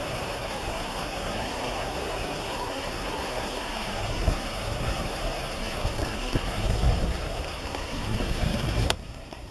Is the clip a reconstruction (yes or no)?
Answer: yes